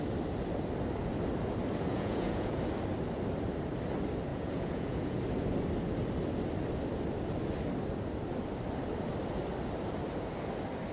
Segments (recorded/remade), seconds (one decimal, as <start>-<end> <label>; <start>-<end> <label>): 0.0-1.9 recorded; 1.9-2.6 remade; 2.6-4.3 recorded; 4.3-5.2 remade; 5.2-10.9 recorded